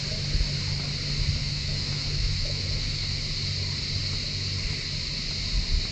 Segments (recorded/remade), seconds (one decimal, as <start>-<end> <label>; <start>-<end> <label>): 0.0-1.4 recorded; 1.4-3.1 remade; 3.1-5.9 recorded